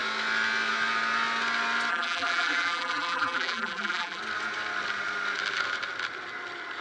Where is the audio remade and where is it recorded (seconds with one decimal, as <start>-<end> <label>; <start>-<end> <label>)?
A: 0.0-1.9 recorded; 1.9-4.2 remade; 4.2-6.8 recorded